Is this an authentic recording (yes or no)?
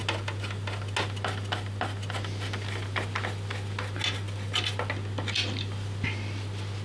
yes